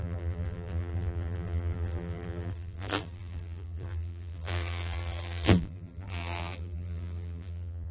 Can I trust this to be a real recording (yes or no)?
no